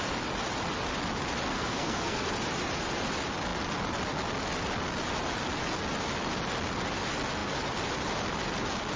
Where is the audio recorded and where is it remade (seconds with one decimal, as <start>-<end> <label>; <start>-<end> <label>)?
0.0-1.5 recorded; 1.5-2.3 remade; 2.3-9.0 recorded